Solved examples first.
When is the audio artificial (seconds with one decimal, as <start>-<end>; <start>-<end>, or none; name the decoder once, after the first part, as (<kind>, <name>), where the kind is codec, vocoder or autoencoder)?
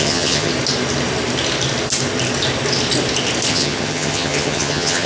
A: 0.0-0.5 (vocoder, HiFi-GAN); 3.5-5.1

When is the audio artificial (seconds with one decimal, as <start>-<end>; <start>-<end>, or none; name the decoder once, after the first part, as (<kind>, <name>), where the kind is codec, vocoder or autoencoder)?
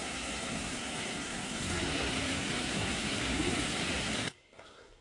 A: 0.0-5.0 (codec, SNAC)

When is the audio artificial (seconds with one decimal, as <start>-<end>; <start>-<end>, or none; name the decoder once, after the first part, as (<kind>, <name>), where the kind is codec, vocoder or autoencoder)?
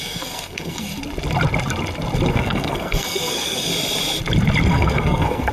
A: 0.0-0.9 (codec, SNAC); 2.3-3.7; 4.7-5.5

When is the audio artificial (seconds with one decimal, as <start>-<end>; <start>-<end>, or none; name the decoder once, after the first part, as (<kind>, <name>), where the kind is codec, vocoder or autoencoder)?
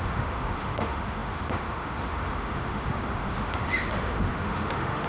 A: 0.0-5.1 (autoencoder, DAC-VAE)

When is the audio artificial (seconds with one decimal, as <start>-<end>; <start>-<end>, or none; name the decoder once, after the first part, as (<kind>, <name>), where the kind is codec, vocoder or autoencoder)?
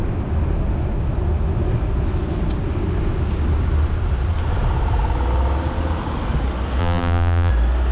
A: 6.8-7.5 (vocoder, BigVGAN v2)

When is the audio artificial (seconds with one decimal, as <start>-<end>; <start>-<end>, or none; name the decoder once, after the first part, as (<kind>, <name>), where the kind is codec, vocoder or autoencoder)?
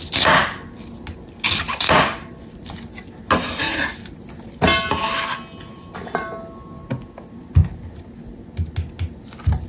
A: none